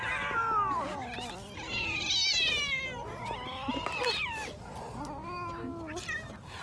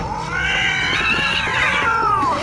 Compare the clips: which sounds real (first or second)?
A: first